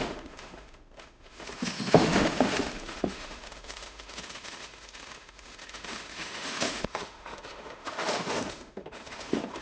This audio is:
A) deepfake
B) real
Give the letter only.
A